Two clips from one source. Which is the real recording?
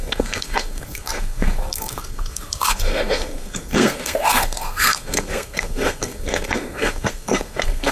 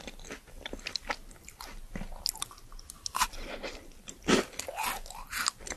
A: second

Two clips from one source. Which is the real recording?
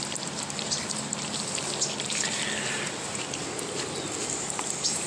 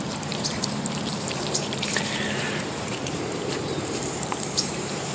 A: first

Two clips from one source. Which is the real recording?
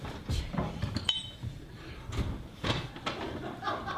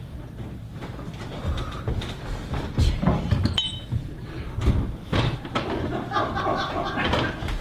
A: second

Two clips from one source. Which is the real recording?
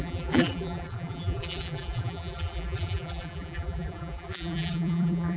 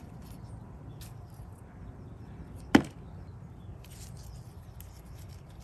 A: second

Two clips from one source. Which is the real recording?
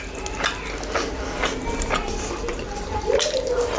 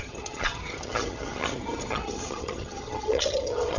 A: first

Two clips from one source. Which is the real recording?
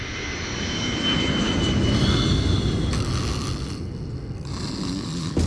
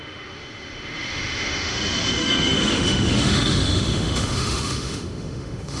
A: first